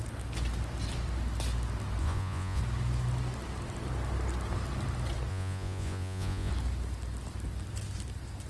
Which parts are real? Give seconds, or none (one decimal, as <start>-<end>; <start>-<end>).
0.0-2.0; 2.6-5.3; 6.5-8.5